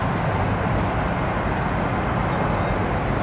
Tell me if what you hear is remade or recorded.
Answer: recorded